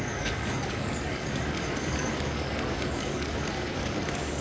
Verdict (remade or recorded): remade